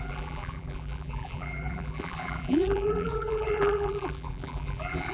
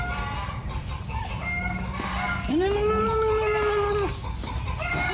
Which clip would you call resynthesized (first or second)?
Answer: first